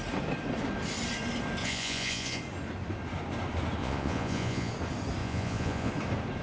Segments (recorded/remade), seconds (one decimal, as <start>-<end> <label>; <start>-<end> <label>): 0.0-1.6 recorded; 1.6-2.4 remade; 2.4-3.8 recorded; 3.8-4.7 remade; 4.7-5.2 recorded; 5.2-5.9 remade; 5.9-6.4 recorded